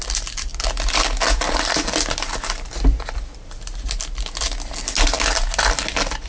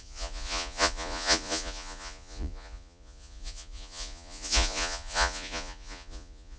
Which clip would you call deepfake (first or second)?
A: second